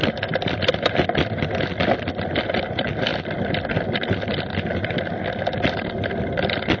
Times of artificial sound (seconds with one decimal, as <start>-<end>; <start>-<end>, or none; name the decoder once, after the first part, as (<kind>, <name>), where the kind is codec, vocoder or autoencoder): none